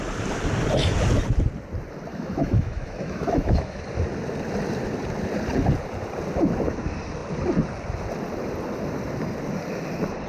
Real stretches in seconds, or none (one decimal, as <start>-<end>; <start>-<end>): 0.0-2.1; 3.8-10.3